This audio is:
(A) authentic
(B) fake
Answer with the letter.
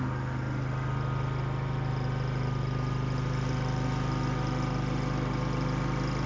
A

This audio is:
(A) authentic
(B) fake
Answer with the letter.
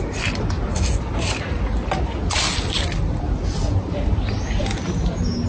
A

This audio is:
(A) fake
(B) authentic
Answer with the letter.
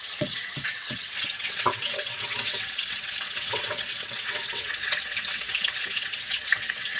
A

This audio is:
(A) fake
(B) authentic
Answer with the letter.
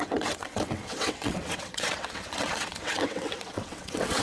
A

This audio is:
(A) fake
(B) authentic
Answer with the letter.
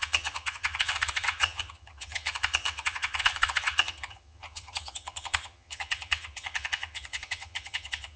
A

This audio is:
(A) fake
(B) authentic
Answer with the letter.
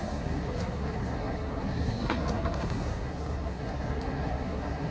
A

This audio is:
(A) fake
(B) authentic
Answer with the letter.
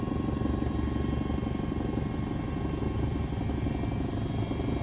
B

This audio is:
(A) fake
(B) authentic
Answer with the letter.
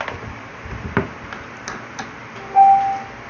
B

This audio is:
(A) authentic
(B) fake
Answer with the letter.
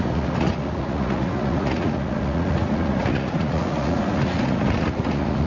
B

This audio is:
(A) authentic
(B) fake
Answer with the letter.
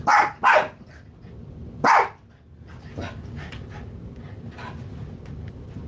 A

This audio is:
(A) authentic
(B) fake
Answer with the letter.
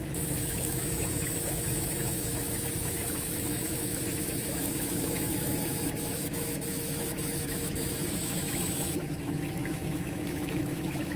B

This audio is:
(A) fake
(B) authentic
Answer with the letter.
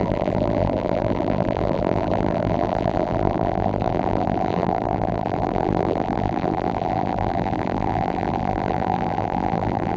A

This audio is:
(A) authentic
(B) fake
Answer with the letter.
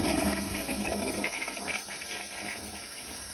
B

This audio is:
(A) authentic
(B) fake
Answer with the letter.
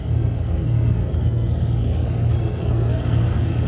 B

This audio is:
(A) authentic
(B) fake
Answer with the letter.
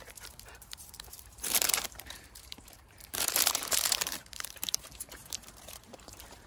B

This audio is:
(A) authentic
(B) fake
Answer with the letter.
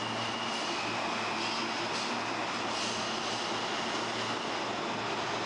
A